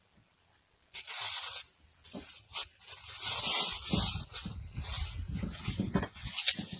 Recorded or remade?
recorded